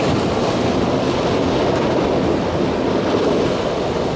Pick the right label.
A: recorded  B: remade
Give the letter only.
A